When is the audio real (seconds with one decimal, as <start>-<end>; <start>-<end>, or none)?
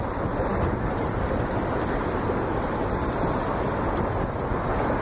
0.0-5.0